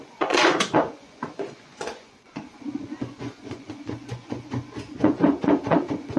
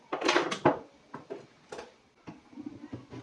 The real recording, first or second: second